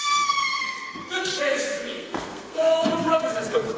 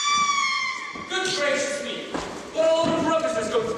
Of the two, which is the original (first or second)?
second